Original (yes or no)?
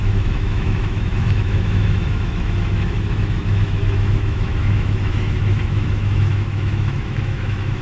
no